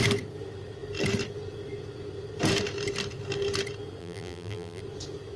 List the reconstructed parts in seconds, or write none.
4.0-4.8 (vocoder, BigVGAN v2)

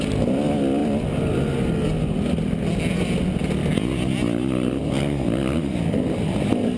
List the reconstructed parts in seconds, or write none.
none

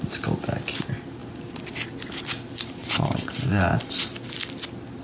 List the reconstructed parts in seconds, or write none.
2.8-3.6 (vocoder, WaveNeXt)

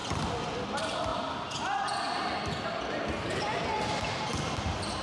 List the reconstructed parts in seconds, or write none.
0.5-1.1 (vocoder, BigVGAN v2); 3.4-5.0

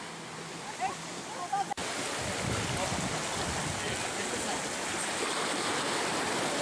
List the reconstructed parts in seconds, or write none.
none

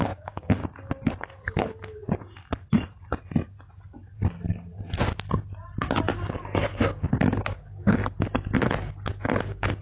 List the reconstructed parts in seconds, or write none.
0.0-0.6 (codec, DAC); 1.3-2.0; 6.7-8.0; 9.4-9.8